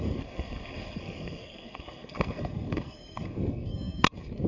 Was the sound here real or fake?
fake